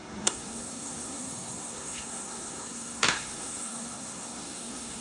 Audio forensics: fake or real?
fake